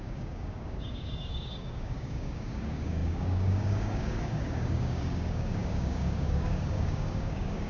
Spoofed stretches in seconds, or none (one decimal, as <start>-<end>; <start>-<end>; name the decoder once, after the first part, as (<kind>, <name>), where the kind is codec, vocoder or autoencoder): 0.0-7.7 (codec, DAC)